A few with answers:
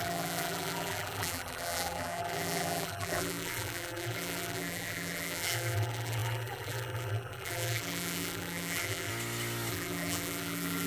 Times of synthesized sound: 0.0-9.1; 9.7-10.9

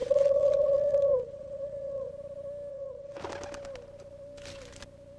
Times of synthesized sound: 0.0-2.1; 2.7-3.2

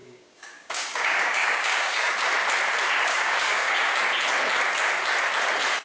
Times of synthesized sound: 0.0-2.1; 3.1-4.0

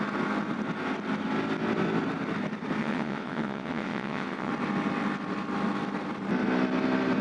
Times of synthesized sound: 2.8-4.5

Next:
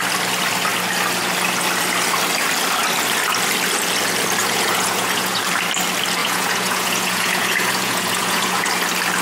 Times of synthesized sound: 4.4-5.4; 6.2-8.7

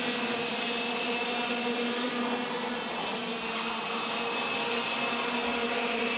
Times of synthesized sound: 0.5-2.2; 3.2-5.0

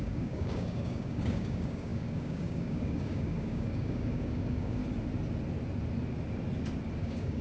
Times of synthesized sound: 0.0-4.8; 7.0-7.4